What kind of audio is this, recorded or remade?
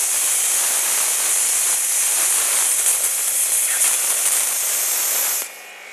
remade